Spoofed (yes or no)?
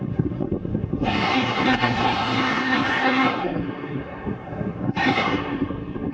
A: yes